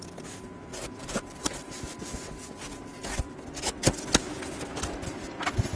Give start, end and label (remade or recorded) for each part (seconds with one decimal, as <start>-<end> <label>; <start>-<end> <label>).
0.0-0.7 recorded; 0.7-1.8 remade; 1.8-5.8 recorded